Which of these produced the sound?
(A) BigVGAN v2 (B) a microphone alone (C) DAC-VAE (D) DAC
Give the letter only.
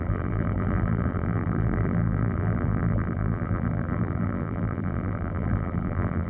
A